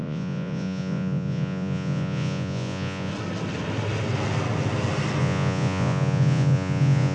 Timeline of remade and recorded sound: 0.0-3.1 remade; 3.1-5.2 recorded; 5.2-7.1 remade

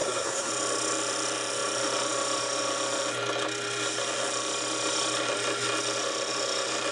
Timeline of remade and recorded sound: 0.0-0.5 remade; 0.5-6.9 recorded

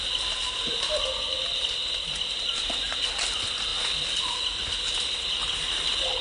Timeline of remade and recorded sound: 0.0-6.2 recorded

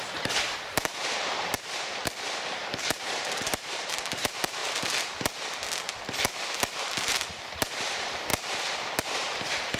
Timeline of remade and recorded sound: 0.0-2.0 remade; 2.0-2.6 recorded; 2.6-4.6 remade; 4.6-6.8 recorded; 6.8-8.3 remade; 8.3-9.0 recorded; 9.0-9.8 remade

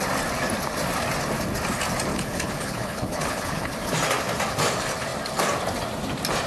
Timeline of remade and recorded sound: 0.0-2.1 recorded; 2.1-3.7 remade; 3.7-6.5 recorded

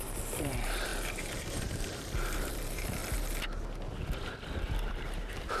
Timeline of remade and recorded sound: 0.0-3.0 remade; 3.0-4.9 recorded; 4.9-5.6 remade

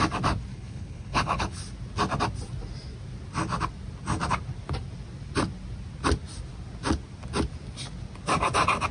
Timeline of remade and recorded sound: 0.0-0.5 recorded; 0.5-1.6 remade; 1.6-8.9 recorded

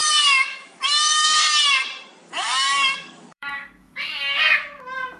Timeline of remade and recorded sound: 0.0-1.4 remade; 1.4-2.2 recorded; 2.2-4.4 remade; 4.4-5.2 recorded